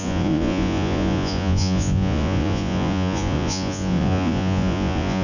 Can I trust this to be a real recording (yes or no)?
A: no